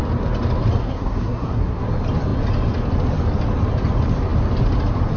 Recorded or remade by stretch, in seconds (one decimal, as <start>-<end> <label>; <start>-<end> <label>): 0.0-0.8 recorded; 0.8-1.8 remade; 1.8-5.2 recorded